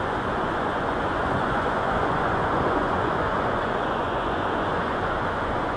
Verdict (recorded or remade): remade